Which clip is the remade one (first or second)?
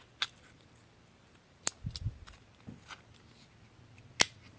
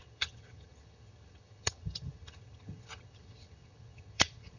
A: second